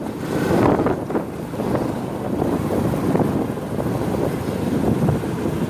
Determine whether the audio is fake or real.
real